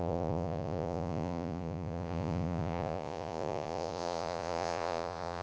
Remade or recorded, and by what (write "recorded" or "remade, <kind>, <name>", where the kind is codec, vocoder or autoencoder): remade, vocoder, Vocos